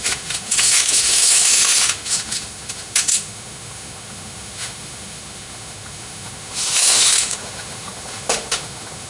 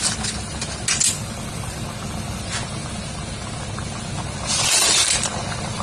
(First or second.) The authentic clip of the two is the second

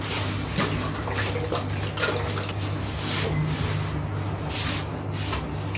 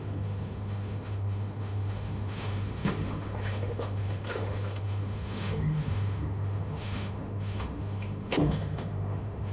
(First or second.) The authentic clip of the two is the first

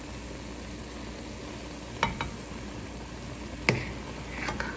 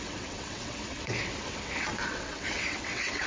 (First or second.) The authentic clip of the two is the first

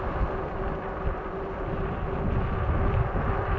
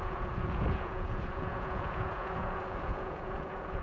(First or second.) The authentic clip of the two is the first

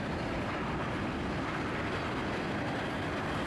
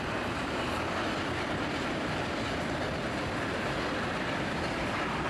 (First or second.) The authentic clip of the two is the first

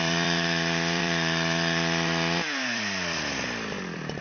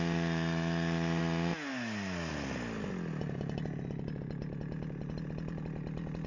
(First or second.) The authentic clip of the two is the second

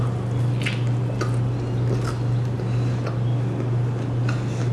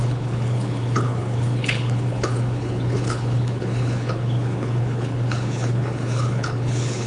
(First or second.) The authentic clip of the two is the first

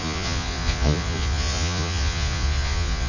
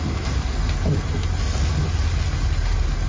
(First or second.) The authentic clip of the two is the second